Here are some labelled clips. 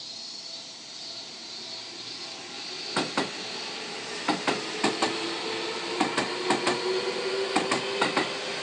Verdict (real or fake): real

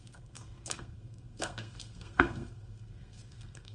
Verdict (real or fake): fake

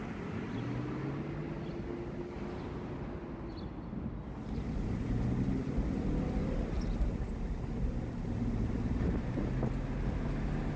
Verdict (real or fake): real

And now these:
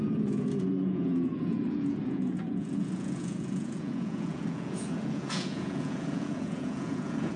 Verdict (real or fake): fake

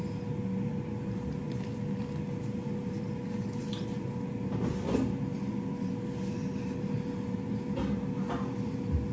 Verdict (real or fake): real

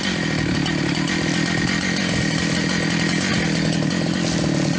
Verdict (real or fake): real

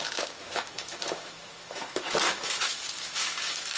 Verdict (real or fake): fake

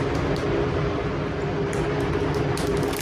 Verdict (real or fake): real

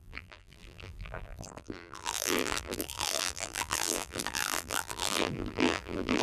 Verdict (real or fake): fake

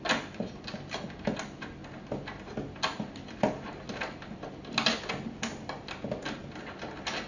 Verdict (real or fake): real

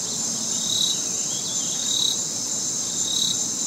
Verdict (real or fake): real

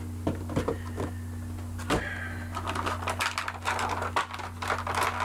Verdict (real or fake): real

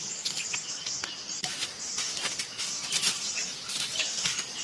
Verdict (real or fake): real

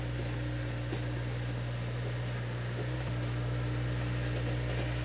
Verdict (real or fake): real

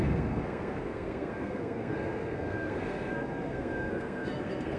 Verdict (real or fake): fake